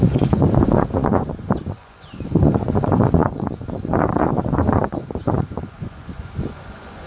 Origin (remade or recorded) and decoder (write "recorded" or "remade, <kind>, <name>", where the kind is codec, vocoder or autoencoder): remade, vocoder, Vocos